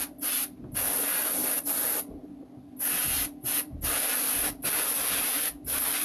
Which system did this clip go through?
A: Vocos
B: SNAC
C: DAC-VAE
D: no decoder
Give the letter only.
D